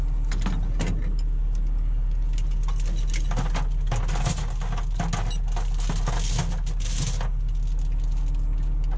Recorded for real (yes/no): yes